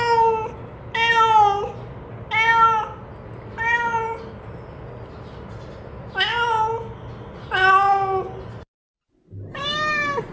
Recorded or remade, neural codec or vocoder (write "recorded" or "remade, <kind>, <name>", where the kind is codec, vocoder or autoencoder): recorded